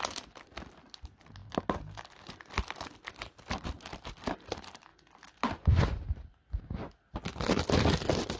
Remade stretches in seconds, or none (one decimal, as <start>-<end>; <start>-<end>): none